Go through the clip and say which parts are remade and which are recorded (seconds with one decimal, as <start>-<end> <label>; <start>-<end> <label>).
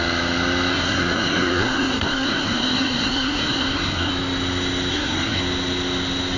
0.0-0.7 recorded; 0.7-4.1 remade; 4.1-4.9 recorded; 4.9-5.4 remade; 5.4-6.4 recorded